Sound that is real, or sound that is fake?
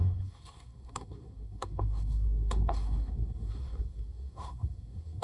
fake